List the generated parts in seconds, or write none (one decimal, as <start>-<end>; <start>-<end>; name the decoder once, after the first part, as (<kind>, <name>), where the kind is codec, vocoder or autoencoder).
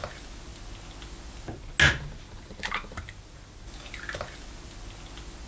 none